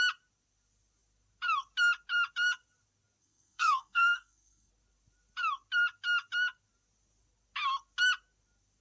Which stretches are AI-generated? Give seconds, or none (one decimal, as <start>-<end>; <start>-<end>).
3.2-4.7